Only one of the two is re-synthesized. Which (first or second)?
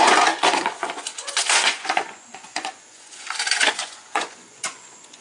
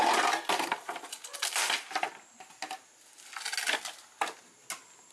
first